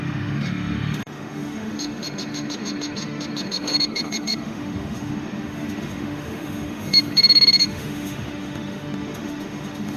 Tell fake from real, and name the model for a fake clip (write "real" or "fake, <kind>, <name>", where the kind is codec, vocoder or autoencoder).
fake, autoencoder, DAC-VAE